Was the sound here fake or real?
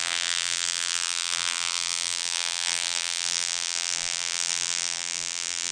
fake